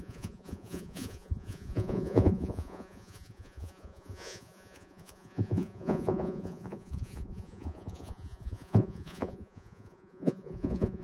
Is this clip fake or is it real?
fake